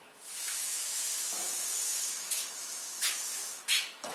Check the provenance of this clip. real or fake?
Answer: fake